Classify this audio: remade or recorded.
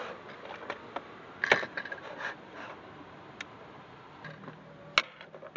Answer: recorded